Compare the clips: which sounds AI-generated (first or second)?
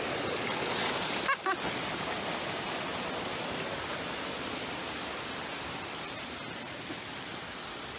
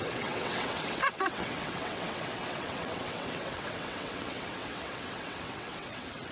second